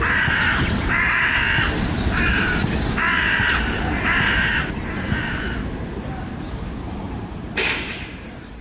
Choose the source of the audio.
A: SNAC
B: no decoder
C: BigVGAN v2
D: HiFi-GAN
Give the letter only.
C